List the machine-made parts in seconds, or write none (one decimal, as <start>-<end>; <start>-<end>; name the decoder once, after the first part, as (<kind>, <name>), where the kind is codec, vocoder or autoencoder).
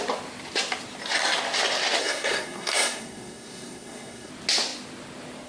2.0-4.3 (codec, SNAC)